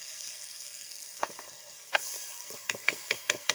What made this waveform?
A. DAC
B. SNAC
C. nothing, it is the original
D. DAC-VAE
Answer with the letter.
B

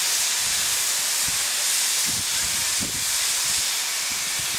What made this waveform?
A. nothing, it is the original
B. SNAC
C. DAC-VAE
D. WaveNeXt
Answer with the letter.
A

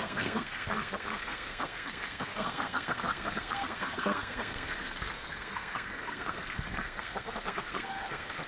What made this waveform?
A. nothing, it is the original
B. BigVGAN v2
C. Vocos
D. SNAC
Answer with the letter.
D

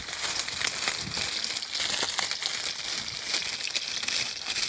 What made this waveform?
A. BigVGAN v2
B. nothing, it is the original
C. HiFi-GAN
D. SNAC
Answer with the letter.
B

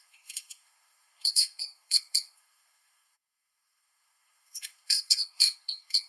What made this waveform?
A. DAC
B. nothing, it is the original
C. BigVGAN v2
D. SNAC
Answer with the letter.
D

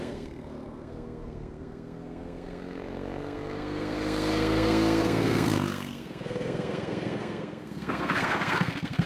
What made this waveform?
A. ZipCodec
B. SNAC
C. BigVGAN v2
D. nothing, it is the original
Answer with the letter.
B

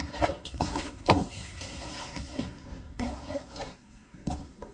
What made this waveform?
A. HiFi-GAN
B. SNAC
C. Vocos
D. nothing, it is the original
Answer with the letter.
B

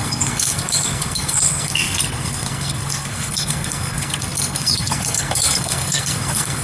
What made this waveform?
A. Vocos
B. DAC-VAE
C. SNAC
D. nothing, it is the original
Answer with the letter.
C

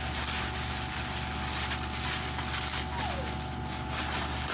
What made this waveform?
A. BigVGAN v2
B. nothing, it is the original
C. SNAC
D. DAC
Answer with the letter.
B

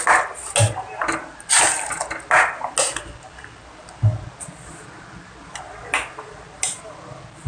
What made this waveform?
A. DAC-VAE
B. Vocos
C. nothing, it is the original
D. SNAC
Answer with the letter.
C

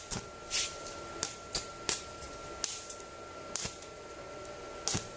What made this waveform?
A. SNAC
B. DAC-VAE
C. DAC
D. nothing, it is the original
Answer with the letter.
D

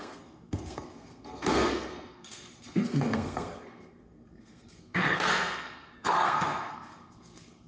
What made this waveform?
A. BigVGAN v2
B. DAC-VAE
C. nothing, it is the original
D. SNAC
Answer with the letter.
D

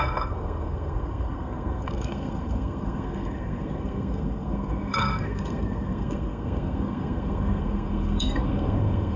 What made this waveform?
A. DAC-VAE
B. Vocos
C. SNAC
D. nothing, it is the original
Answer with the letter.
C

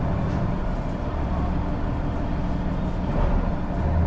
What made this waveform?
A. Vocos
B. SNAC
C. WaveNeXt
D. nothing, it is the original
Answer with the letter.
D